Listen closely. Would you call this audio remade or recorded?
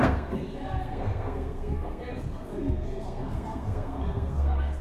remade